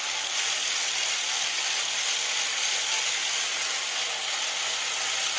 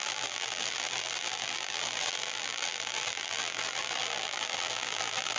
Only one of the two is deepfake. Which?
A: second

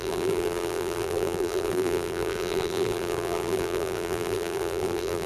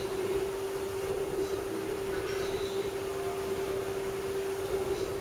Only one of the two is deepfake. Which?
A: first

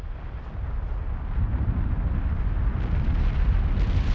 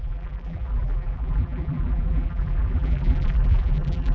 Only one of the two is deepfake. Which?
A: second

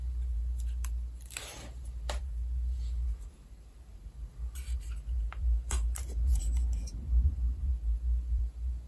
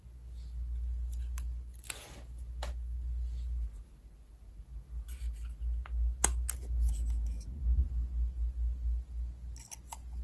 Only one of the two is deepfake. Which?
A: first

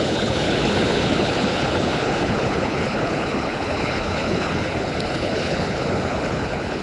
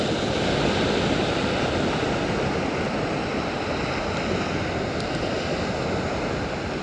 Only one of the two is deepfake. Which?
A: first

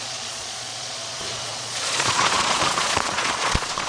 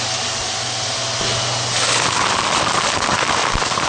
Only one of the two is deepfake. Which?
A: first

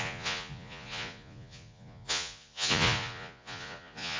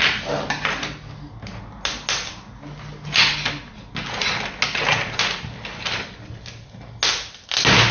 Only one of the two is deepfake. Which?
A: first